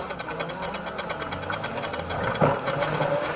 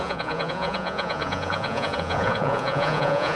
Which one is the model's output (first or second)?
second